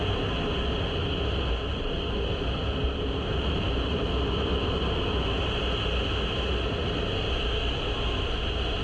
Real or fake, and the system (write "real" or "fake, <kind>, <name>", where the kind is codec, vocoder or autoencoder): real